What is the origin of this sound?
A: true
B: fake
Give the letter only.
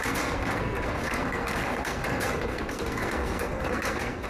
B